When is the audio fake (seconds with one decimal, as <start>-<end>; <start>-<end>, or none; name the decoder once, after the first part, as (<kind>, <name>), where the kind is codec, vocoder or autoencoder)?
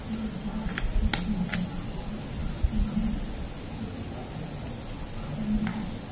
none